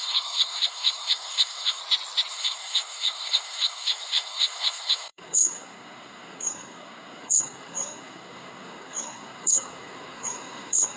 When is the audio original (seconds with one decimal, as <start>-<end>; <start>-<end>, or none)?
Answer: 1.8-2.3